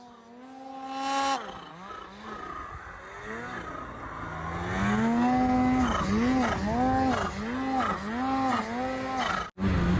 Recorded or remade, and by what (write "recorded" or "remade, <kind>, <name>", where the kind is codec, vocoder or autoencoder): recorded